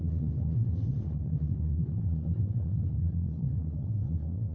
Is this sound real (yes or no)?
no